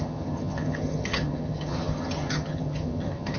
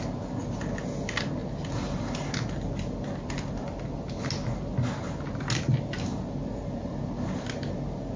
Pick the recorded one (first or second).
second